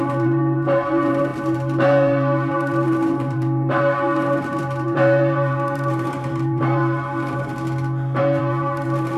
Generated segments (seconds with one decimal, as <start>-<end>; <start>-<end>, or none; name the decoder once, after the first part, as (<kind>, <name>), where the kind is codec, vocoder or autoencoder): 0.0-7.5 (vocoder, BigVGAN v2); 8.2-9.2